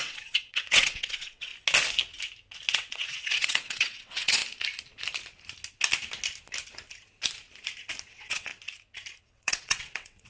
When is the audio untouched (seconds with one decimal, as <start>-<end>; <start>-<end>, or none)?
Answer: 1.5-2.7; 4.4-8.1; 8.5-9.2